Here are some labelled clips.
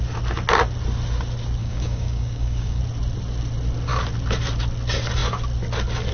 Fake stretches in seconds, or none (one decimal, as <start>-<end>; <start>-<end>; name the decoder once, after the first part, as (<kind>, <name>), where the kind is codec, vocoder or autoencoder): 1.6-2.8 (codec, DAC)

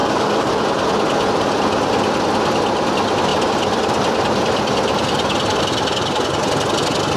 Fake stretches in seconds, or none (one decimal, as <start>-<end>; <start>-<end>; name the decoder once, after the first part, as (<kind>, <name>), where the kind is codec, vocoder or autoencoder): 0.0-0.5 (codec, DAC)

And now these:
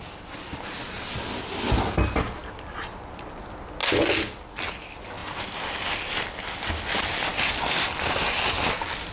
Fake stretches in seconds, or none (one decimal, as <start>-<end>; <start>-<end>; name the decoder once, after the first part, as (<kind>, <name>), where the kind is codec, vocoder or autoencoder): none

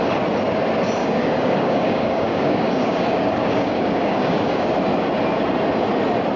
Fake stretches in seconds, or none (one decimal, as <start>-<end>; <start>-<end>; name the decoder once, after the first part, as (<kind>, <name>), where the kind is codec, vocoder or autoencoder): 1.0-4.7 (codec, DAC)

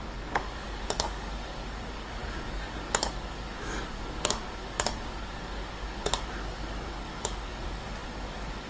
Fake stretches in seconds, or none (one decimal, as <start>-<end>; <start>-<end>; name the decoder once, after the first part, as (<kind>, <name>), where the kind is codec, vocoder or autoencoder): 0.0-8.7 (codec, DAC)

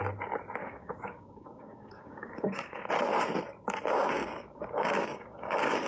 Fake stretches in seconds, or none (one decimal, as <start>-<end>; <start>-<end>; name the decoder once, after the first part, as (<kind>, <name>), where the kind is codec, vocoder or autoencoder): 0.6-2.9 (codec, DAC); 4.2-5.9

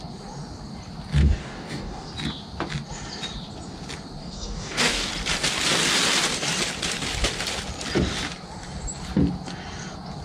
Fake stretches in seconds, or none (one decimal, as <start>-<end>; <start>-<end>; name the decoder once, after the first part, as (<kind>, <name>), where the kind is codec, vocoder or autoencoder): 1.2-2.1 (codec, DAC); 4.2-5.1